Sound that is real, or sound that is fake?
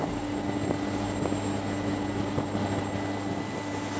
real